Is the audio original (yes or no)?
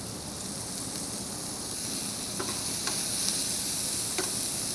yes